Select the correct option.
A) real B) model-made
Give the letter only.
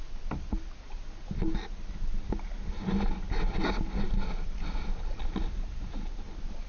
A